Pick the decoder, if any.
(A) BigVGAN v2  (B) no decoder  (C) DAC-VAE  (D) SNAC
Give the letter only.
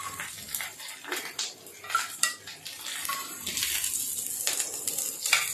B